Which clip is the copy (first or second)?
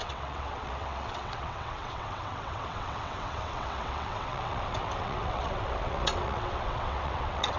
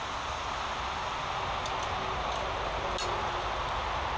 first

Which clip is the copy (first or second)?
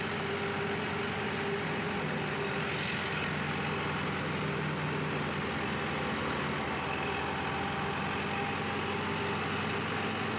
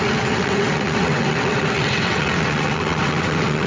second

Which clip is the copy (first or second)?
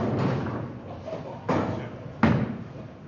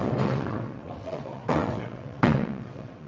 second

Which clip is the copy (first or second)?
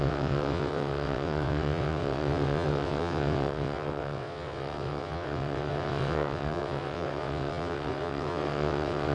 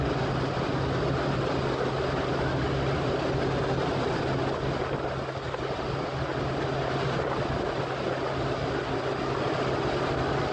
first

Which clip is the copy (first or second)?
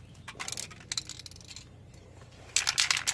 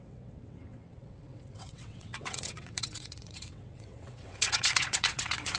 second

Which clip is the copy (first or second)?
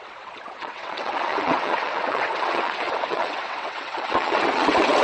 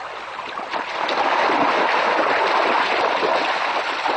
first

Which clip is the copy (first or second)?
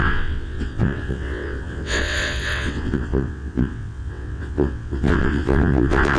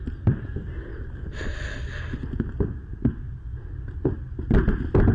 first